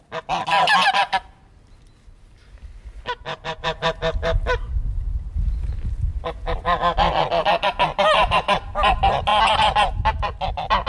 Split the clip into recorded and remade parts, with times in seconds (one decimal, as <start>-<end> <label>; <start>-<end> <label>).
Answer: 0.0-10.9 recorded